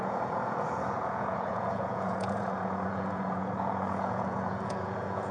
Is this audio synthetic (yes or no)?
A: yes